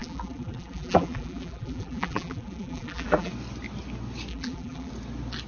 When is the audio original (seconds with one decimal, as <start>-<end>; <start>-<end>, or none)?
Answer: 3.3-4.3; 4.9-5.5